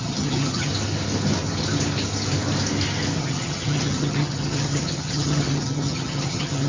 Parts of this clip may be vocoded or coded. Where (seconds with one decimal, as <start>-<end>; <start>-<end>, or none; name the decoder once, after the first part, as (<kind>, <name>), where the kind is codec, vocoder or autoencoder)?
0.0-0.7 (vocoder, HiFi-GAN); 3.2-6.7